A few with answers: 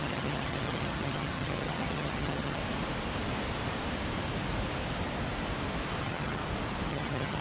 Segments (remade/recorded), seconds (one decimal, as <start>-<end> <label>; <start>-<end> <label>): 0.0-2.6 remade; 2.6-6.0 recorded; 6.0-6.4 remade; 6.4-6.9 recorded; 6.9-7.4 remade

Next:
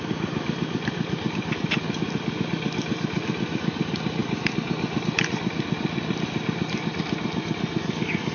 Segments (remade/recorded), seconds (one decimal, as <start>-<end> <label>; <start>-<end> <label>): 0.0-8.3 recorded

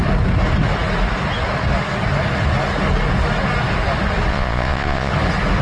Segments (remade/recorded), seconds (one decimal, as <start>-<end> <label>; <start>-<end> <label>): 0.0-4.3 recorded; 4.3-5.1 remade; 5.1-5.6 recorded

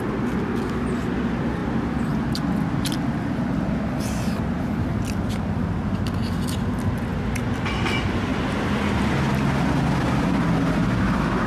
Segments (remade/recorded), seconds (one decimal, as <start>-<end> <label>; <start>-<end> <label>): 0.0-11.5 recorded

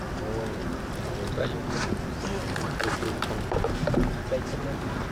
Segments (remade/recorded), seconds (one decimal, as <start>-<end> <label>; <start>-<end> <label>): 0.0-5.1 recorded

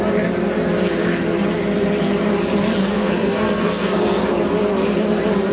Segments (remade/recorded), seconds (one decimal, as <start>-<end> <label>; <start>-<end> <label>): 0.0-2.8 recorded; 2.8-4.2 remade; 4.2-5.5 recorded